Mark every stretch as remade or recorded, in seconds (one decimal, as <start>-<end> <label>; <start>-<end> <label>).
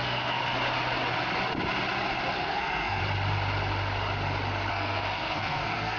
0.0-0.4 remade; 0.4-2.4 recorded; 2.4-3.0 remade; 3.0-4.7 recorded; 4.7-6.0 remade